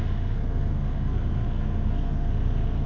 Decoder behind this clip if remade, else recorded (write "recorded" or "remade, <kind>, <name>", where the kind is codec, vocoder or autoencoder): remade, codec, SNAC